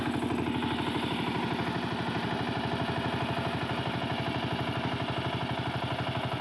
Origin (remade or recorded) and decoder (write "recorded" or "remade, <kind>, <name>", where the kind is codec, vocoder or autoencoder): recorded